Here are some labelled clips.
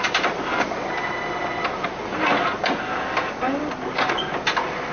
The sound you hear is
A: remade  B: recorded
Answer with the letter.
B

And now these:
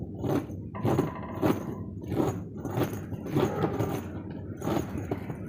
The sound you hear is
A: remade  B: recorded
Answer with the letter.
B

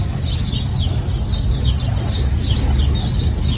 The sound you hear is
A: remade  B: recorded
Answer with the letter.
B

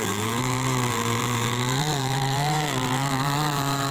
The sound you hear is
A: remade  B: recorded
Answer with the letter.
A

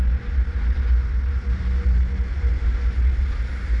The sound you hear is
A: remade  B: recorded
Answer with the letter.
B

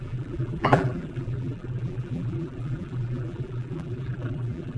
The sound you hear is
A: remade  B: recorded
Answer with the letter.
A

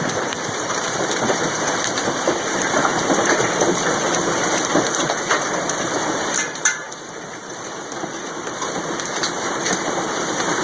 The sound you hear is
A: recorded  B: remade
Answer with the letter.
B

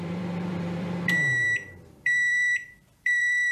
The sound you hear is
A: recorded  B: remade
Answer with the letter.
B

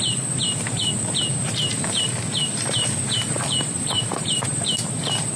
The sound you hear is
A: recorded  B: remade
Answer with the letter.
B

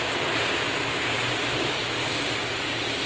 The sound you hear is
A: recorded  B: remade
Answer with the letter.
A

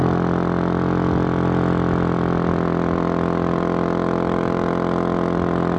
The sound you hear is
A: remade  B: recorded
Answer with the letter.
B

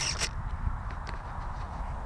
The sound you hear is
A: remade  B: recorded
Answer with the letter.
B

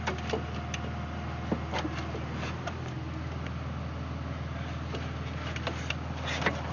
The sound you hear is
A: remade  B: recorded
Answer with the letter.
B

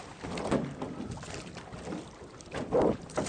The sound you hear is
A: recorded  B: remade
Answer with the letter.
A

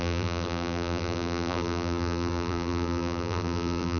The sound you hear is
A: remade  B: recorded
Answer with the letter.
A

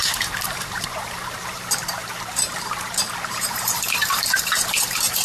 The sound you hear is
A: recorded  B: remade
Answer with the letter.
B